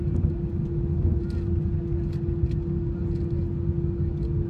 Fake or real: real